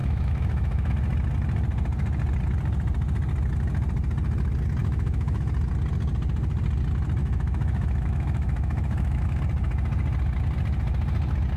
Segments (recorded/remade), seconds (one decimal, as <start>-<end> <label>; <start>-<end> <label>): 0.0-0.9 remade; 0.9-4.8 recorded; 4.8-5.4 remade; 5.4-7.2 recorded; 7.2-9.4 remade; 9.4-11.6 recorded

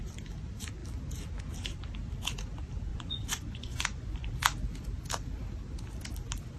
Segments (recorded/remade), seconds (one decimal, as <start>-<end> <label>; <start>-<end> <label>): 0.0-2.9 recorded; 2.9-4.3 remade; 4.3-6.6 recorded

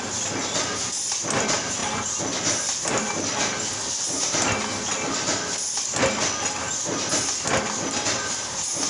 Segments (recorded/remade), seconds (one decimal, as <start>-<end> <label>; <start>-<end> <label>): 0.0-8.9 recorded